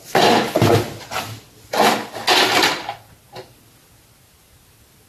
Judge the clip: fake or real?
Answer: real